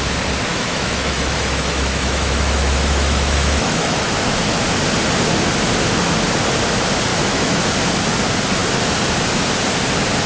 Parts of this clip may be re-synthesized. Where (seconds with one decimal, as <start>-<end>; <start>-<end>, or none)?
0.5-4.1; 7.1-7.6